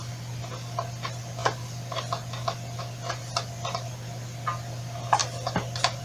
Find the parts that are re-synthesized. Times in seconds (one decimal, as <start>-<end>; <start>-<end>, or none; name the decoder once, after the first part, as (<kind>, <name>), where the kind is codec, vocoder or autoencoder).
none